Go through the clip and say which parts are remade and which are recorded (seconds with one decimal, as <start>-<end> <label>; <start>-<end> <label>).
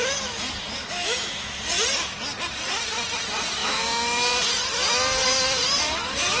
0.0-0.8 recorded; 0.8-1.6 remade; 1.6-3.6 recorded; 3.6-4.3 remade; 4.3-6.4 recorded